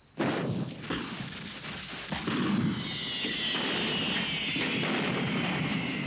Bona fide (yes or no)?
yes